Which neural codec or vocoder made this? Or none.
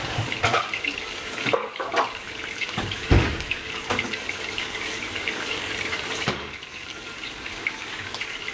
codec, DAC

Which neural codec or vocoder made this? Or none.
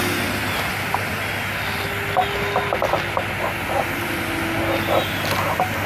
none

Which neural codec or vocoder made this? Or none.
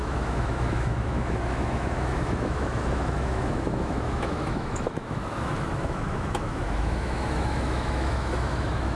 autoencoder, DAC-VAE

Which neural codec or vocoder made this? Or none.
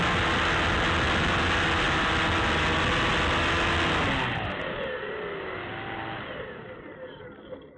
none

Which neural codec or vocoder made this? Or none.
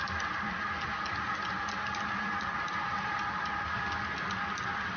none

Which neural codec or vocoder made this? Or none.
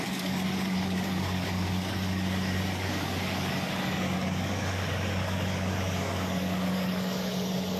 codec, DAC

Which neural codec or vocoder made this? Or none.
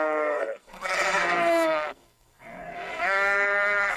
codec, SNAC